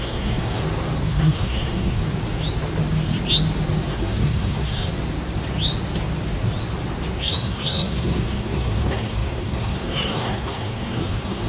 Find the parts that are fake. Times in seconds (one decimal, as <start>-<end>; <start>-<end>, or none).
0.0-0.6; 1.1-2.0; 3.9-4.9; 7.2-11.5